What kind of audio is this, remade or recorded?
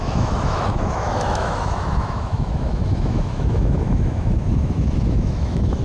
remade